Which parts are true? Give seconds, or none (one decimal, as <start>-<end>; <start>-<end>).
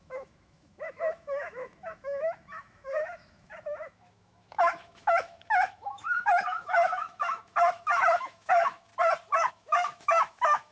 8.9-9.5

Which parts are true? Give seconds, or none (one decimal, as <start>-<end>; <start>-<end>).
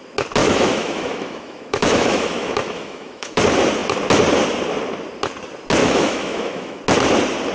0.0-0.4; 3.4-5.8; 6.8-7.5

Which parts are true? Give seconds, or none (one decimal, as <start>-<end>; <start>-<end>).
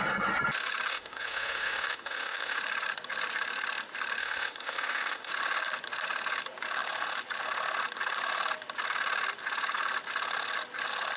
0.0-0.9; 2.6-4.2; 5.3-11.2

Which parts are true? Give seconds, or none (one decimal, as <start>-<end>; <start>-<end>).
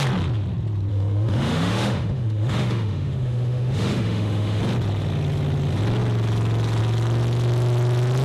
0.0-0.9; 4.6-8.2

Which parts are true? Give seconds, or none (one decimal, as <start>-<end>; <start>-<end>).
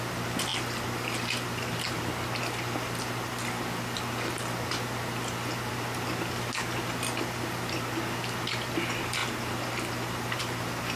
0.0-11.0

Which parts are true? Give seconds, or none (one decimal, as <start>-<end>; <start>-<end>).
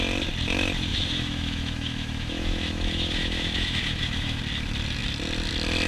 0.0-0.9; 4.4-5.9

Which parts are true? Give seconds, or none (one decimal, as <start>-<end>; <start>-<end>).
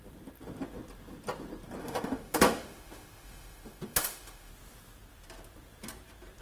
0.0-1.8; 4.5-6.4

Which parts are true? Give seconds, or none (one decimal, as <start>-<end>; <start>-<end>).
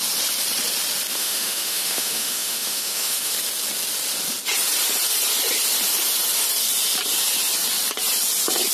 0.0-1.1; 3.3-8.7